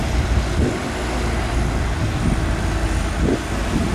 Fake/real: real